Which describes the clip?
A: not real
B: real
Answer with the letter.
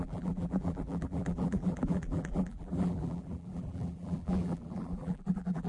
A